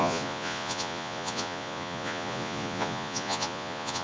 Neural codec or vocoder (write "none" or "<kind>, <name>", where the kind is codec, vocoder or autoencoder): vocoder, Vocos